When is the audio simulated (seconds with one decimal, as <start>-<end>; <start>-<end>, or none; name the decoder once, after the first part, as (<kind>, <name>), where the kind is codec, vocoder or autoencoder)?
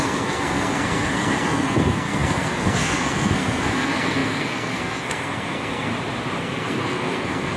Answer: 0.0-5.9 (codec, SNAC); 6.4-7.6